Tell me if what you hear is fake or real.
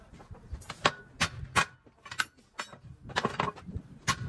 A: real